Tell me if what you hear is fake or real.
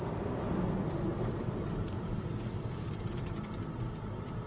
real